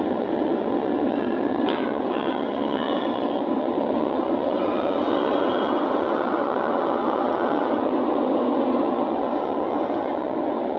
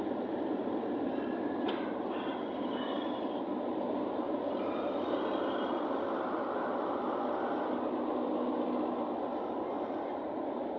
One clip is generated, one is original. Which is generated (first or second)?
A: first